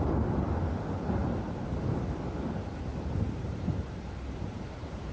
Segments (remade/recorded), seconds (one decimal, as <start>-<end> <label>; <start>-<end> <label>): 0.0-1.2 recorded; 1.2-1.8 remade; 1.8-2.9 recorded; 2.9-5.1 remade